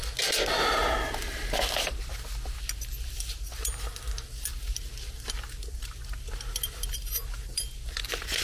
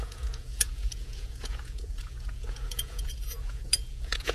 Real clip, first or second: first